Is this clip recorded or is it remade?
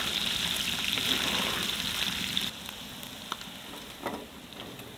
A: recorded